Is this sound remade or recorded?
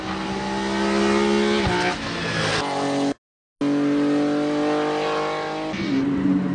recorded